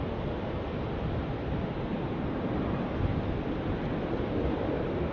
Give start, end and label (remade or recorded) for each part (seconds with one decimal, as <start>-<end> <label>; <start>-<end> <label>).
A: 0.0-5.1 recorded